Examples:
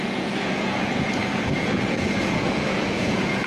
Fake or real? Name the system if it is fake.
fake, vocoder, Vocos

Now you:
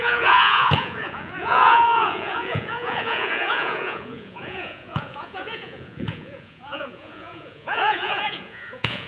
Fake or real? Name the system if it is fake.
fake, vocoder, Vocos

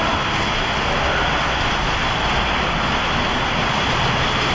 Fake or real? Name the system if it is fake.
real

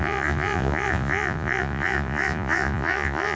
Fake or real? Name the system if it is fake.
fake, vocoder, Vocos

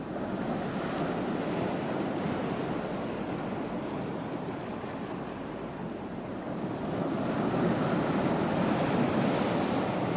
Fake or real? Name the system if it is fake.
real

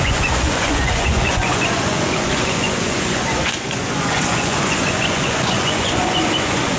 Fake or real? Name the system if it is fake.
fake, vocoder, Vocos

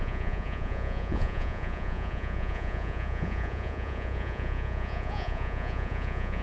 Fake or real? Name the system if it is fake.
fake, vocoder, Vocos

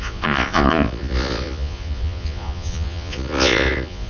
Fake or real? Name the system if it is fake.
fake, vocoder, Vocos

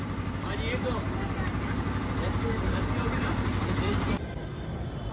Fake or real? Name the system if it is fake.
real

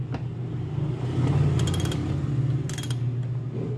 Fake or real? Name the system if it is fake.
real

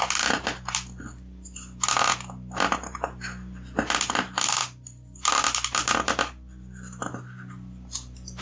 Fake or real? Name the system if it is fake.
real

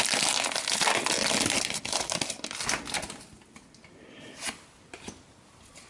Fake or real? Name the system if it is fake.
real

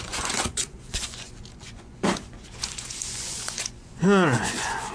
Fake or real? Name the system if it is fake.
fake, vocoder, Vocos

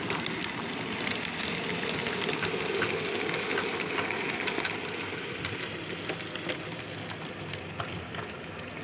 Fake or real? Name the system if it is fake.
real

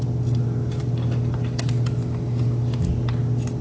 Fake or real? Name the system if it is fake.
real